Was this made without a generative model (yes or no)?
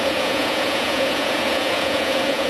no